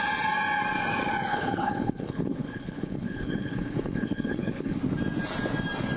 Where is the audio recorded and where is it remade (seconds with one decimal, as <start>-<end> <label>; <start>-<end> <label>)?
0.0-1.3 recorded; 1.3-4.8 remade; 4.8-6.0 recorded